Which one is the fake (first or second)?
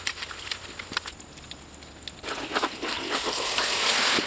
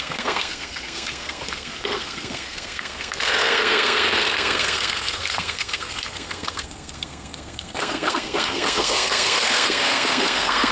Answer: second